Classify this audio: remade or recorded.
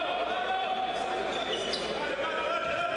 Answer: recorded